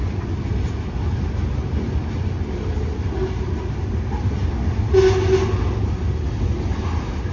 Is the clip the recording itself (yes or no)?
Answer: yes